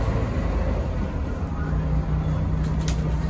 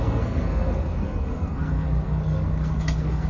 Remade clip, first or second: second